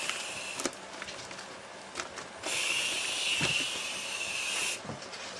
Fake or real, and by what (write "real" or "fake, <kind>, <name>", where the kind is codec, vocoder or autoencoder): real